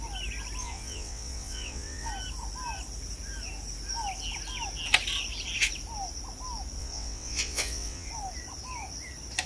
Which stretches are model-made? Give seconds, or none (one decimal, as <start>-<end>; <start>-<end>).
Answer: 0.6-2.1; 6.8-8.1